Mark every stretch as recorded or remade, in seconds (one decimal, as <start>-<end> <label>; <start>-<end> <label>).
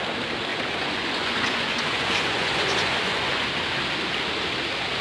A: 0.0-0.5 recorded; 0.5-3.5 remade; 3.5-5.0 recorded